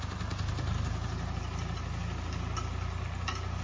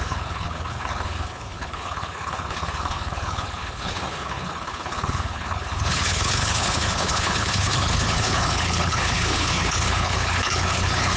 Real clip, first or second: first